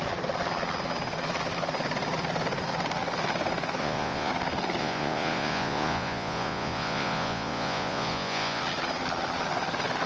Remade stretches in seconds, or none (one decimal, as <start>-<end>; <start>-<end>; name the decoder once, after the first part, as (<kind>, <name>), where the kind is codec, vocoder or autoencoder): 3.8-4.3 (vocoder, Vocos); 4.8-8.6